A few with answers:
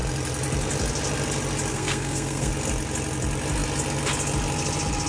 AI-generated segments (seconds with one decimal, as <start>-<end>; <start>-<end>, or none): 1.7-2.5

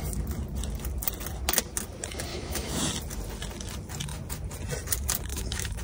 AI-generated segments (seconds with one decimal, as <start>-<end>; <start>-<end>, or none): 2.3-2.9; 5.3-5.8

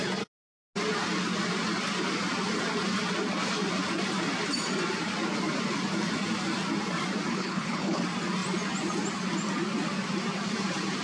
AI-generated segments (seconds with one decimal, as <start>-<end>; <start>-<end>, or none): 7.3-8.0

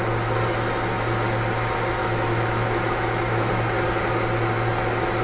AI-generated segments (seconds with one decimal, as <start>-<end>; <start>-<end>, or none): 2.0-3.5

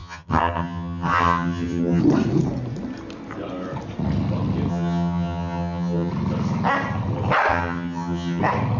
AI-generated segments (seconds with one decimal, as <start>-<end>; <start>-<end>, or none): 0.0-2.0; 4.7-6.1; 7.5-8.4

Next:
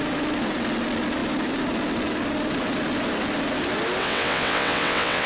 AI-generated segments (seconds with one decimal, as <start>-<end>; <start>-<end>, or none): 4.0-5.3